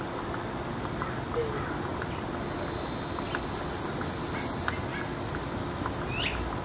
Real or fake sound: real